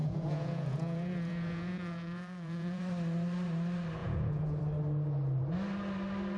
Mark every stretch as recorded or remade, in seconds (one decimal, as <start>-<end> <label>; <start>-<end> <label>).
0.0-2.8 remade; 2.8-4.0 recorded; 4.0-4.6 remade; 4.6-6.4 recorded